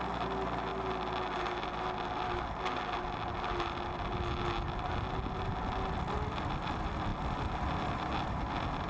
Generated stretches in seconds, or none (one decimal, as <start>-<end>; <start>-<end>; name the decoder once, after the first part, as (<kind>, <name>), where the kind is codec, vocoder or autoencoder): none

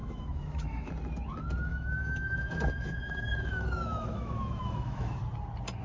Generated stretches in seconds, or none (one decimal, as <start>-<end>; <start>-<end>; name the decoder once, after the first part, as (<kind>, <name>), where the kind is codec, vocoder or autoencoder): 0.0-0.9 (autoencoder, DAC-VAE); 1.7-5.2

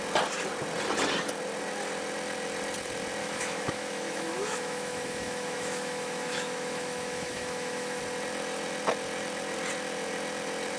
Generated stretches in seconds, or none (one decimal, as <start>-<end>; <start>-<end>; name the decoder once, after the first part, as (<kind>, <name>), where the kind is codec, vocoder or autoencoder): 3.2-8.0 (autoencoder, DAC-VAE)

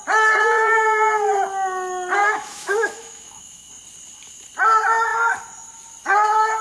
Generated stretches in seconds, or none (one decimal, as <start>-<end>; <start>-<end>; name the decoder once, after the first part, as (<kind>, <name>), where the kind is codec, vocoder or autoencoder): 2.2-3.7 (autoencoder, DAC-VAE)

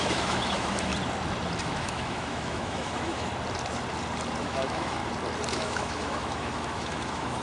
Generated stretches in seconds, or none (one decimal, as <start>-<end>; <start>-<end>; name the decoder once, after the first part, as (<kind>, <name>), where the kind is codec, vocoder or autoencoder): 0.0-0.9 (autoencoder, DAC-VAE); 1.6-3.3; 4.4-5.0; 5.5-7.4

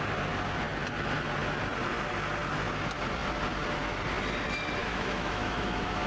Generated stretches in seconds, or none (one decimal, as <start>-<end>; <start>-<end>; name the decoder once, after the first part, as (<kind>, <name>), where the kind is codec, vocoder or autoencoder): 4.8-6.1 (autoencoder, DAC-VAE)

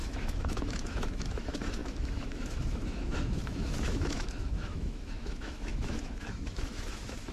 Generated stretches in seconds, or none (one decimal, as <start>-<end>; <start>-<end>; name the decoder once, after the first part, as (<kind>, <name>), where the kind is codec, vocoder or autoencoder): 0.0-7.3 (autoencoder, DAC-VAE)